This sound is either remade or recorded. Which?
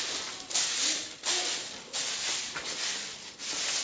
recorded